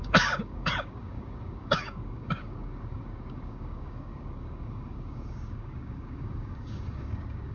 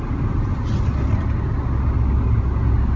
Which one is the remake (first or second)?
first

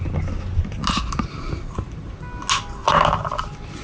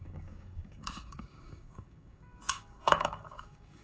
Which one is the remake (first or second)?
second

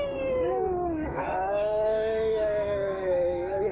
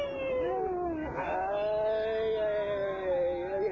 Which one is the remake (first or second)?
first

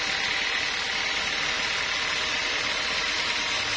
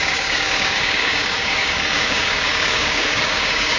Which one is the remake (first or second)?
second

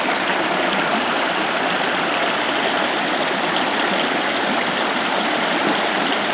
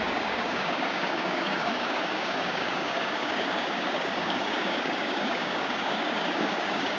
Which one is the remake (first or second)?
second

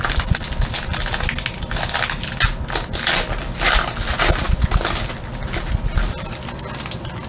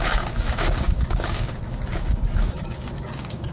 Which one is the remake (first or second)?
second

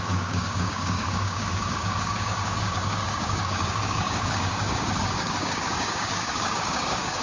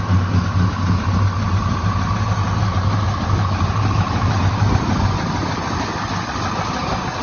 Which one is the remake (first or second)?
first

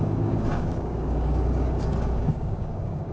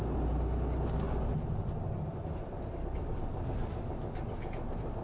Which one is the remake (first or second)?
first